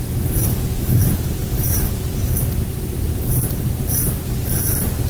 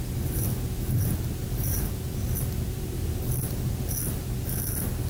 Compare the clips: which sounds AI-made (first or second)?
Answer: first